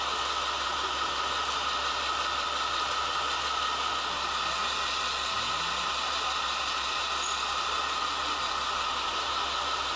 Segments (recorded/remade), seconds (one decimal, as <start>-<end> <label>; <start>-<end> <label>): 0.0-10.0 recorded